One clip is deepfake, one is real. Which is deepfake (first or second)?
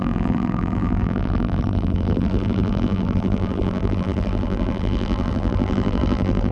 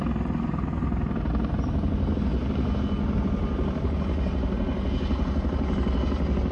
first